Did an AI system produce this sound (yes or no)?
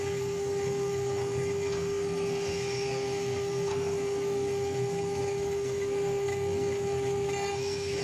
yes